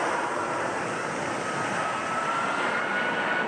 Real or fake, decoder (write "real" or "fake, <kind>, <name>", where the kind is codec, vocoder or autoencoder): real